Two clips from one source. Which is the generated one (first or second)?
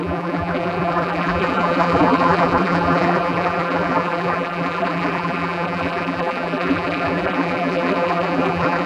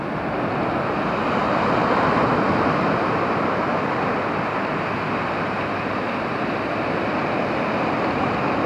first